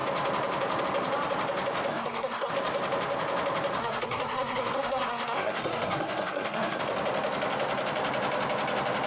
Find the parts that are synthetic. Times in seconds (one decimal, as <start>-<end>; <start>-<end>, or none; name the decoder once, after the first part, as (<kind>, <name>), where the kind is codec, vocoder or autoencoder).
1.9-2.5 (codec, SNAC); 3.8-6.8